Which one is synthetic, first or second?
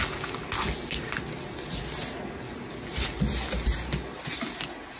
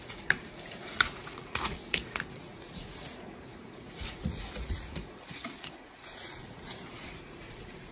second